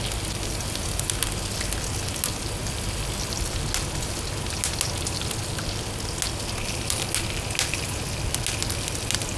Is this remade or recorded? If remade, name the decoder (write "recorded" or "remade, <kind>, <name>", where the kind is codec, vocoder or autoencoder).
recorded